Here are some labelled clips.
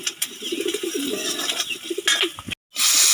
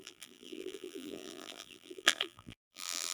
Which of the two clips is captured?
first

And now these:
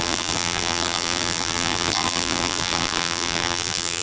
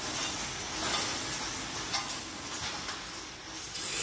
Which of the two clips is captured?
second